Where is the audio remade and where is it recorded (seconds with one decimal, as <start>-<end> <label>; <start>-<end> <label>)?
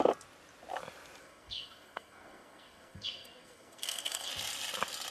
0.0-1.2 recorded; 1.2-4.3 remade; 4.3-5.1 recorded